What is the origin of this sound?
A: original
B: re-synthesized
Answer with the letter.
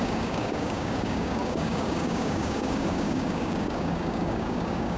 B